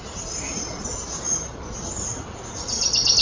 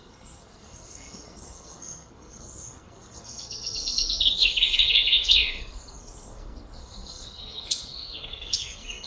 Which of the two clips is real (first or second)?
first